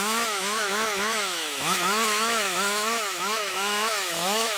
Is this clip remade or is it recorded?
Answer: remade